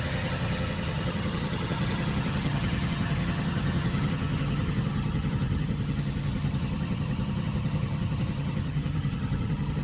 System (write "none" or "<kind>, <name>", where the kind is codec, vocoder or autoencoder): vocoder, HiFi-GAN